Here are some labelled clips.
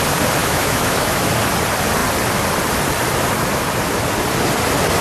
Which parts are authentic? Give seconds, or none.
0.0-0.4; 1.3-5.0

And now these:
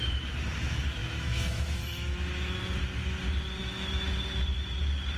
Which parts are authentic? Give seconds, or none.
0.0-1.0; 2.6-3.6; 4.1-5.2

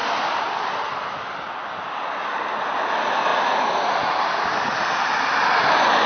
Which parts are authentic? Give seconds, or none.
0.0-6.1

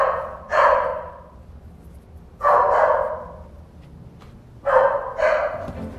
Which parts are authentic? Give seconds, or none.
0.0-6.0

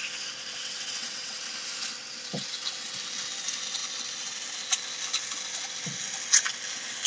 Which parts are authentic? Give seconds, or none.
0.0-0.6; 1.4-7.1

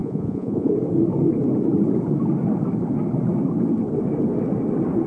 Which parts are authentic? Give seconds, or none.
0.7-5.1

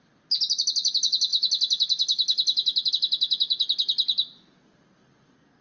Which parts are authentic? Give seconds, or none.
0.0-5.6